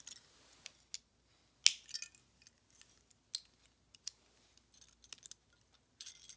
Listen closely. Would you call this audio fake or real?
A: real